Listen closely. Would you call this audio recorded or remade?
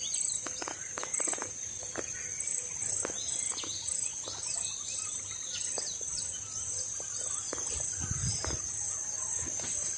recorded